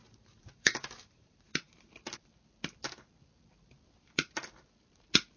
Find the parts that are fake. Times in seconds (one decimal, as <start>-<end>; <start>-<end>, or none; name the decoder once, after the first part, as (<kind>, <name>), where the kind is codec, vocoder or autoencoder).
0.0-1.7 (vocoder, BigVGAN v2)